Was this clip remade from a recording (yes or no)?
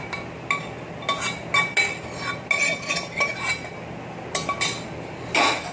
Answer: no